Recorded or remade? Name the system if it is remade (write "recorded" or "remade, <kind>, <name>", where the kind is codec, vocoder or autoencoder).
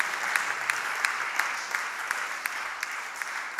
recorded